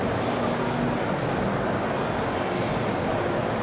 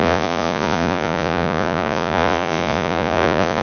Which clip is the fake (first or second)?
second